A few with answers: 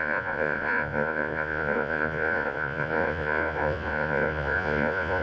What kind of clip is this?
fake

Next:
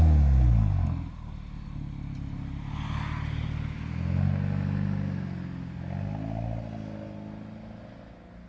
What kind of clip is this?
real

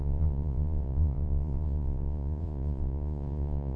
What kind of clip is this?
fake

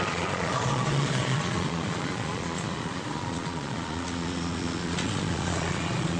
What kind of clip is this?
fake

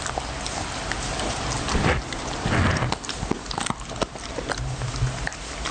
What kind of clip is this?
real